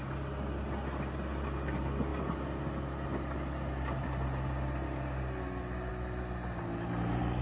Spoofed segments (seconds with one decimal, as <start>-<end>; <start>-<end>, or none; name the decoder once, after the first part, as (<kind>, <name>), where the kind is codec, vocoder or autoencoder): none